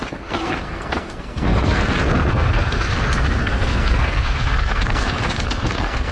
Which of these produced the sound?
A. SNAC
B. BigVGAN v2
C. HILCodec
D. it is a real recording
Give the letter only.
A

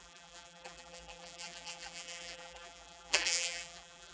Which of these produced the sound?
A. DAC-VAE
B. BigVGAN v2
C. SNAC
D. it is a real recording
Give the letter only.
B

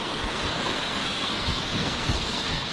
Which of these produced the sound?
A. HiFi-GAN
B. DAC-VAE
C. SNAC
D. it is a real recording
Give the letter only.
C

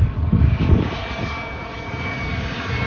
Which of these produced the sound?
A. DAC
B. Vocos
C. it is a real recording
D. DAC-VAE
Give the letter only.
A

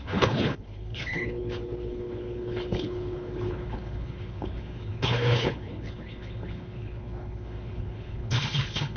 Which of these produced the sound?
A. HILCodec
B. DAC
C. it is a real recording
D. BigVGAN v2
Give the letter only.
A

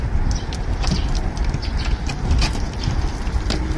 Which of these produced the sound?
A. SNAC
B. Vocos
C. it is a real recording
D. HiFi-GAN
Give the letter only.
C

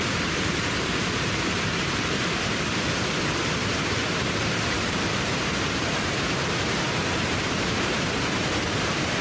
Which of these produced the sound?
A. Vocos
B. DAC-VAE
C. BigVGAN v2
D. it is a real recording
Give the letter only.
C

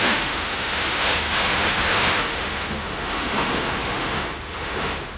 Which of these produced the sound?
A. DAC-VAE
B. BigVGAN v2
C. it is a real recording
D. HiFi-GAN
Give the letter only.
A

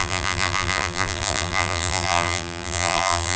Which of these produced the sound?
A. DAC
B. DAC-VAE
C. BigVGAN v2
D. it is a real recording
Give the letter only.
C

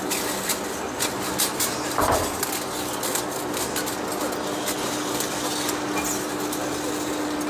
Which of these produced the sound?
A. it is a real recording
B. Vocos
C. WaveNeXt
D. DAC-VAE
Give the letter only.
A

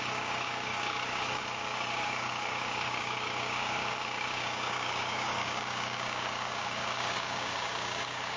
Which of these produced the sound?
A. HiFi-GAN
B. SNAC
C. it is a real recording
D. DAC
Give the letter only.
D